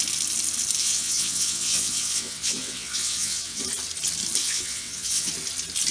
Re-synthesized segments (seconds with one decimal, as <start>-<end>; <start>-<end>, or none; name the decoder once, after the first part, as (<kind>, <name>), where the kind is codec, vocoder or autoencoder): 0.8-3.6 (vocoder, WaveNeXt); 4.4-5.3